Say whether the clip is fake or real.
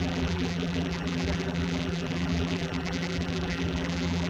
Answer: fake